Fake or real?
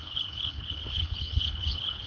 fake